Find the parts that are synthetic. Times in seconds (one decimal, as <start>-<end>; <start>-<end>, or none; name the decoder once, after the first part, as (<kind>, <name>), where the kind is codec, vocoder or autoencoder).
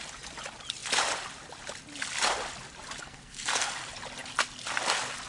3.0-3.7 (codec, SNAC)